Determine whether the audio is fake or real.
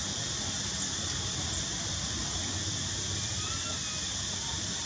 real